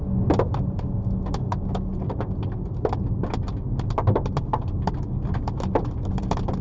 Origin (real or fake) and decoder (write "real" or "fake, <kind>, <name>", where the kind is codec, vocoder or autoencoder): real